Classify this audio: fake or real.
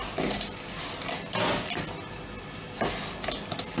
real